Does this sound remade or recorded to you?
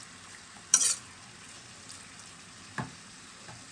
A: recorded